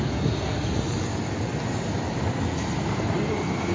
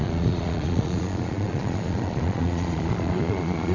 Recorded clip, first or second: first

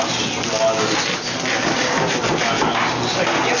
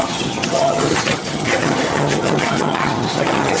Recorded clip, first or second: first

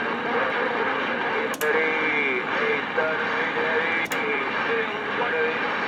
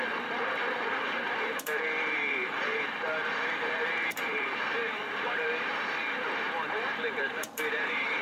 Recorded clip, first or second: first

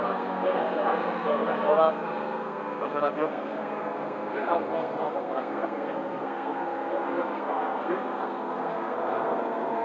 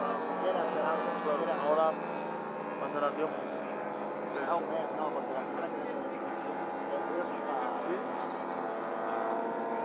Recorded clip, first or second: second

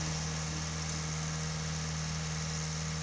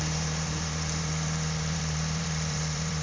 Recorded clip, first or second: first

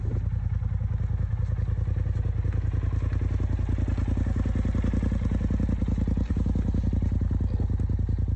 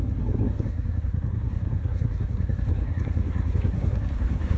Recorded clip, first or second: first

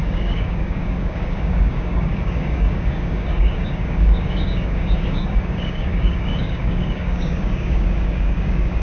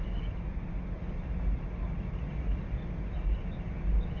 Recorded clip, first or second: second